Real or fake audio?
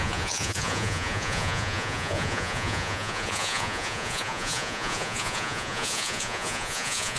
fake